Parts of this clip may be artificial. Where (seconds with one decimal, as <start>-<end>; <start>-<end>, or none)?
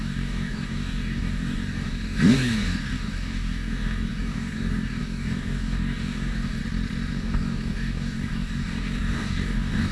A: 0.0-6.6; 7.1-9.9